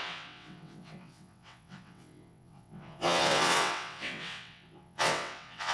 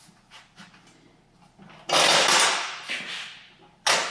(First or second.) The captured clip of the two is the second